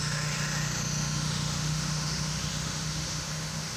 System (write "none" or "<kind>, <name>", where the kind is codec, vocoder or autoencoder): autoencoder, DAC-VAE